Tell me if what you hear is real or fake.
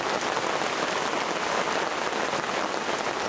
real